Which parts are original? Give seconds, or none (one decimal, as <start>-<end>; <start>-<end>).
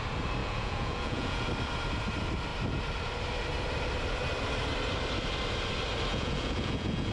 0.0-0.4; 1.5-6.1